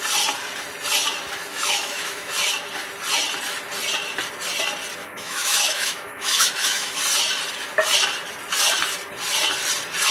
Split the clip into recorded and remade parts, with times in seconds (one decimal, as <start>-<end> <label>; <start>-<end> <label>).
0.0-1.5 recorded; 1.5-2.3 remade; 2.3-5.0 recorded; 5.0-7.0 remade; 7.0-10.1 recorded